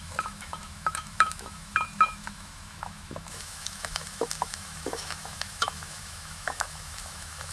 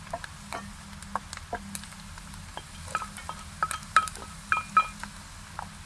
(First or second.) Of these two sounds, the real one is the second